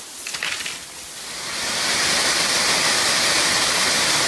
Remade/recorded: recorded